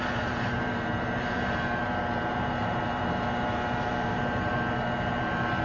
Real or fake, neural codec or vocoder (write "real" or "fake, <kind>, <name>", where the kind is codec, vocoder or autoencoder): fake, vocoder, BigVGAN v2